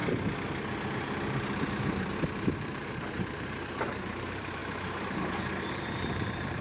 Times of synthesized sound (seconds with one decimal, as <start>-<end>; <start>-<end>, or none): 1.6-4.6; 5.7-6.6